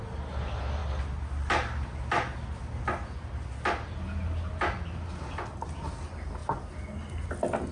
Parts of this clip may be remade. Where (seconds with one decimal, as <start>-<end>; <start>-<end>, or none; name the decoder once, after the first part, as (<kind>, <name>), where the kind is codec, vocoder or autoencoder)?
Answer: none